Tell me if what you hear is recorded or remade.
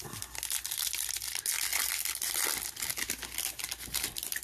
recorded